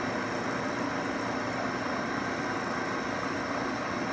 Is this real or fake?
real